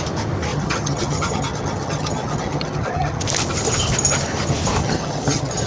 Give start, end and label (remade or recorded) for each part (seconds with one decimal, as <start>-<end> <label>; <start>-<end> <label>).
0.0-0.5 recorded; 0.5-3.2 remade; 3.2-4.8 recorded; 4.8-5.7 remade